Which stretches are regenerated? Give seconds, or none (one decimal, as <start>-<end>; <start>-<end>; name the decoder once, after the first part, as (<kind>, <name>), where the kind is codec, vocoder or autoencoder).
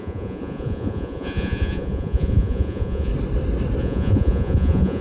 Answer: 0.0-3.1 (vocoder, Vocos); 3.8-5.0